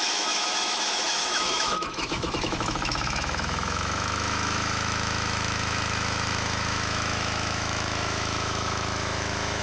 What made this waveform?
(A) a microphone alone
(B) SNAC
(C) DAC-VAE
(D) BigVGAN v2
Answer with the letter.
C